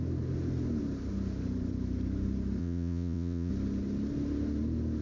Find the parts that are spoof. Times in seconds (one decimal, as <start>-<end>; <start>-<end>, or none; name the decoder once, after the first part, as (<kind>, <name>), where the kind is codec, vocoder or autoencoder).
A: 2.6-3.5 (vocoder, Vocos)